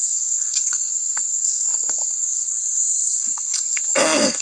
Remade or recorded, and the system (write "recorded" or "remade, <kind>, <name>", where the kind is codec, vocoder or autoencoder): remade, codec, SNAC